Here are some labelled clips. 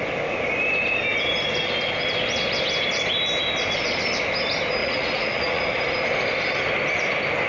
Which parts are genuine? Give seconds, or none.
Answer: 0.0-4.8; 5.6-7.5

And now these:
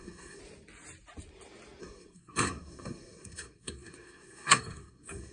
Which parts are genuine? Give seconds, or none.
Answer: 0.4-1.8